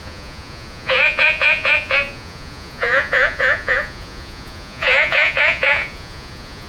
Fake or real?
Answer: fake